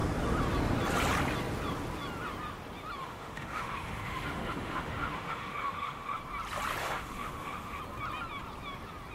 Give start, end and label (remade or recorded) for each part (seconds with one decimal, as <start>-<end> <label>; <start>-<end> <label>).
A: 0.0-3.0 recorded; 3.0-6.2 remade; 6.2-6.8 recorded; 6.8-7.8 remade; 7.8-9.1 recorded